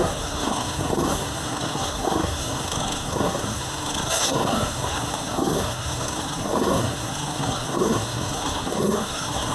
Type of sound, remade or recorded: remade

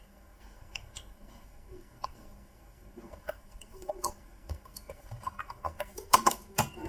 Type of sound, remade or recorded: remade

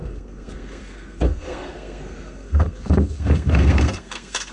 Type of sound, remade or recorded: remade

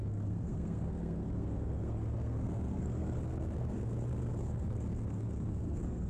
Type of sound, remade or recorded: remade